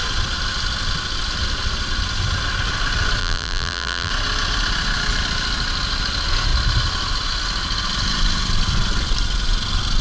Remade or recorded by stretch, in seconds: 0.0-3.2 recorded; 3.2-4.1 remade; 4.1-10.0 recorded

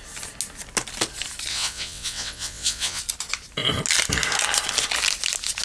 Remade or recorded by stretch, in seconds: 0.0-1.5 recorded; 1.5-3.0 remade; 3.0-5.6 recorded

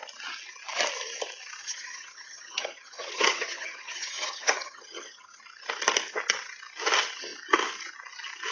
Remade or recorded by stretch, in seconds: 0.0-1.6 recorded; 1.6-5.4 remade; 5.4-8.5 recorded